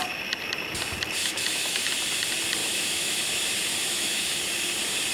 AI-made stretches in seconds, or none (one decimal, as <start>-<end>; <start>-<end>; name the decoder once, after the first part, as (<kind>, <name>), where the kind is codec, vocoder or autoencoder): 1.2-1.9 (autoencoder, DAC-VAE); 2.6-3.2; 3.7-4.4